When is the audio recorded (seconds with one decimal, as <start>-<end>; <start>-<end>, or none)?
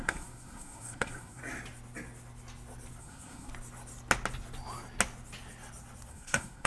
1.4-3.0; 3.5-6.1